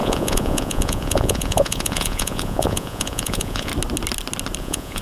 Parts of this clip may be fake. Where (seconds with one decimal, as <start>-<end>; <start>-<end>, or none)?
0.0-3.7; 4.6-5.0